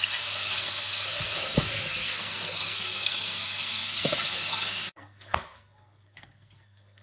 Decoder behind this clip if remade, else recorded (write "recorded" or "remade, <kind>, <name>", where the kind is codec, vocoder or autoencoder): remade, codec, SNAC